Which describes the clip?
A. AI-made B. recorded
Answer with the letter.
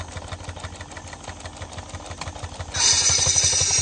B